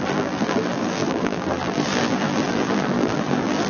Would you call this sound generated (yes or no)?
yes